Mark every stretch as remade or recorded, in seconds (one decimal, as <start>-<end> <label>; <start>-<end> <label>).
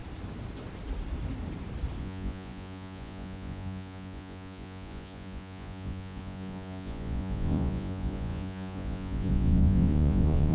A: 0.0-2.0 recorded; 2.0-10.5 remade